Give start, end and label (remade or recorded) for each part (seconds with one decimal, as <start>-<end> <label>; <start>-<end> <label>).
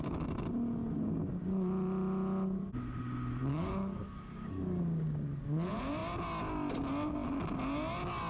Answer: 0.0-3.5 recorded; 3.5-4.8 remade; 4.8-8.3 recorded